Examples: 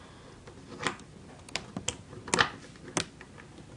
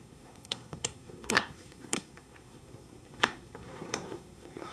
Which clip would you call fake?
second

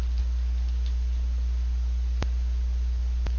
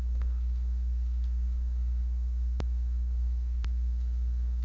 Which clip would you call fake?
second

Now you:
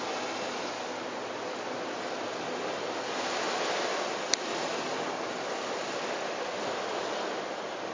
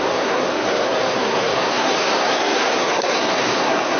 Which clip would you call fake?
second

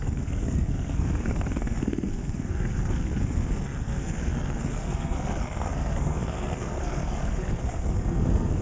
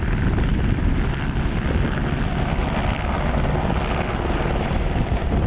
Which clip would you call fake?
first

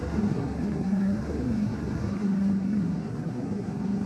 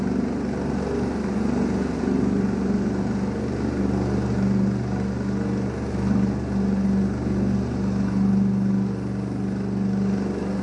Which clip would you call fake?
first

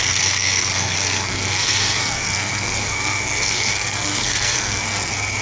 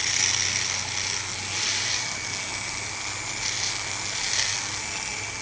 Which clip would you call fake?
first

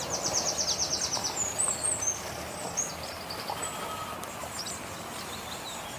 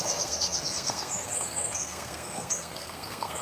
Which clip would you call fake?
second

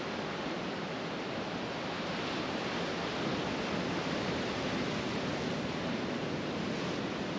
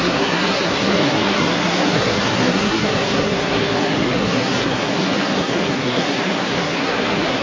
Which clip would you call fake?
second